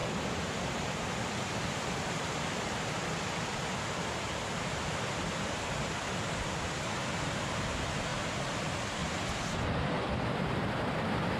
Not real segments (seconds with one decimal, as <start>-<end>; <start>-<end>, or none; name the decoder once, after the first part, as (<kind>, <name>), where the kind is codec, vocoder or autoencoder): 0.5-1.6 (vocoder, BigVGAN v2); 2.2-9.0; 9.7-11.4